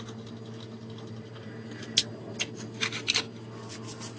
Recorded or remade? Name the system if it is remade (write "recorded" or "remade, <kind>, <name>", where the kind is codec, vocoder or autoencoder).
recorded